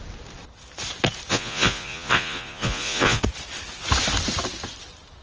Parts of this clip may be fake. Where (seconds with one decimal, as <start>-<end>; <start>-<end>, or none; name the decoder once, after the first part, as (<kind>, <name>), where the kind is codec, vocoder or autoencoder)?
1.3-3.2 (vocoder, Vocos)